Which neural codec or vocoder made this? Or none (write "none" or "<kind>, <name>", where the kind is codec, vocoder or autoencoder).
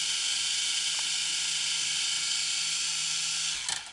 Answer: none